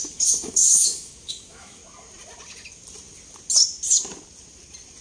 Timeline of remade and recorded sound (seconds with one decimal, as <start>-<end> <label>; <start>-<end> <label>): 0.0-1.8 remade; 1.8-5.0 recorded